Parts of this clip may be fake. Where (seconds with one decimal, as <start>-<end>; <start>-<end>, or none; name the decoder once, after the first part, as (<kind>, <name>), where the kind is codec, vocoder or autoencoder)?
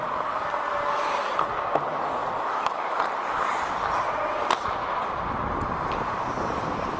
none